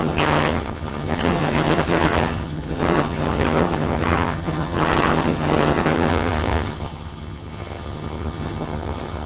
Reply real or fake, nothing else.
fake